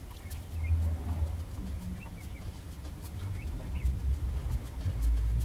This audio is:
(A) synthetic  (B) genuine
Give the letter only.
B